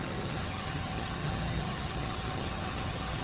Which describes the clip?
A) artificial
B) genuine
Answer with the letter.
A